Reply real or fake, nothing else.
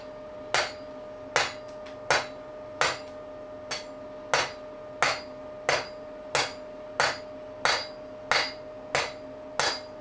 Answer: real